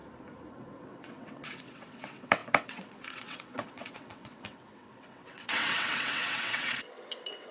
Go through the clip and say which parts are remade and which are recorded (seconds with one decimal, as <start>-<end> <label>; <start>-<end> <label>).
0.0-0.5 recorded; 0.5-7.5 remade